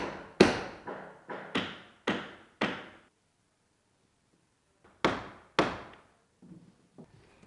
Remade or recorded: recorded